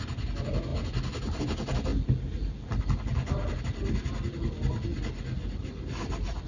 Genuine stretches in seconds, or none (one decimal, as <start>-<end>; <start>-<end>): 0.0-6.5